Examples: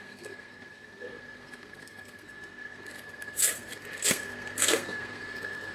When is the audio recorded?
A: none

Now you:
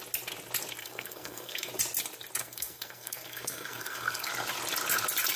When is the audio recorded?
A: 0.0-0.8; 1.7-2.4; 4.3-5.4

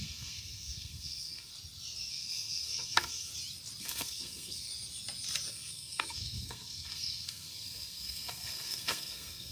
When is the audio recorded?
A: 1.5-2.1; 3.3-3.8; 4.7-5.5

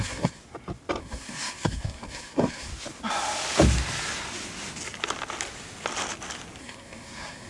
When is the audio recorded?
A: 0.4-1.0; 2.7-6.6

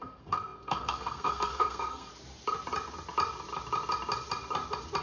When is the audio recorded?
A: 2.1-5.0